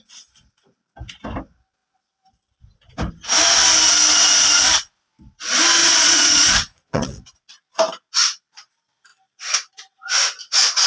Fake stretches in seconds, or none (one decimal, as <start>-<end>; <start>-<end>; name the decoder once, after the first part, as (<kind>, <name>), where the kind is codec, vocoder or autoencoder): 5.8-7.2 (vocoder, Vocos)

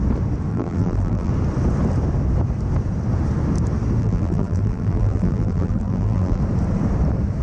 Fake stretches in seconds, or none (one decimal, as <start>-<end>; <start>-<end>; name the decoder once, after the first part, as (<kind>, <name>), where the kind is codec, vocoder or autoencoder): 0.5-1.3 (vocoder, BigVGAN v2); 4.0-6.4

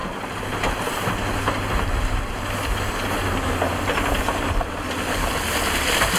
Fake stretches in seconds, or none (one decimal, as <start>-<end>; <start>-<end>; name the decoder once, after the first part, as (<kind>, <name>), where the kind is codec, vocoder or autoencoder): none

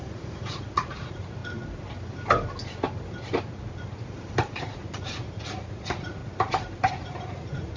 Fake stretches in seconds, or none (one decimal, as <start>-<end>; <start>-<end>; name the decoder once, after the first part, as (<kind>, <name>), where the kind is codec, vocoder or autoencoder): 0.0-1.4 (vocoder, Vocos); 4.6-6.2; 6.9-7.8